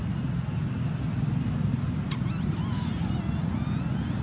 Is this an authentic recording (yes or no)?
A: yes